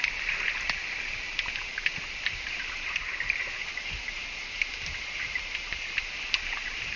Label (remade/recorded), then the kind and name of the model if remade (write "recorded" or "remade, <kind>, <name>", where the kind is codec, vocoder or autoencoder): recorded